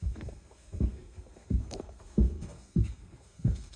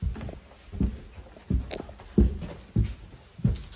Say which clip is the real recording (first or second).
second